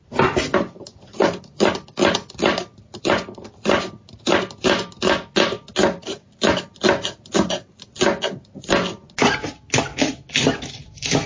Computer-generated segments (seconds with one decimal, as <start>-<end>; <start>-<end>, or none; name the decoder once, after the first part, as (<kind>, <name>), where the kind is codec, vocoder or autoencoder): 0.0-6.2 (vocoder, BigVGAN v2); 7.3-7.9; 8.6-9.9; 10.7-11.3